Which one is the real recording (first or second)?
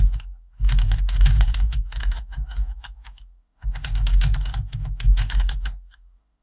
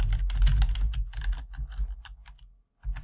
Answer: second